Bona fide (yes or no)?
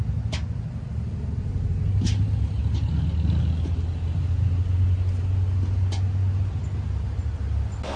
yes